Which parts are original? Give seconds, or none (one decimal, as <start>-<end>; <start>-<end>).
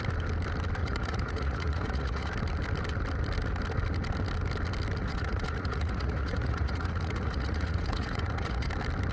0.0-0.8; 2.3-5.0; 8.7-9.1